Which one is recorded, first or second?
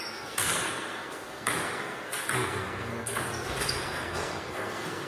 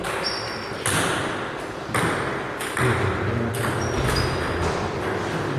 second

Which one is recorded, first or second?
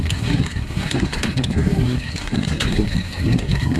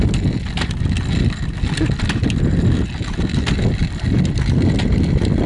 second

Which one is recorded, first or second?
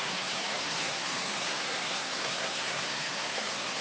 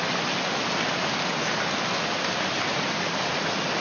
second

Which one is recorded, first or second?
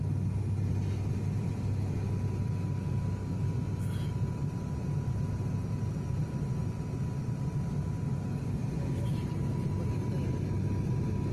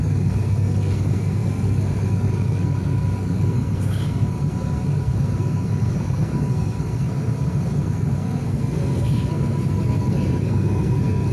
first